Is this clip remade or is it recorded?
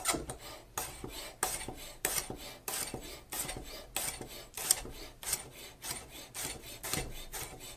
recorded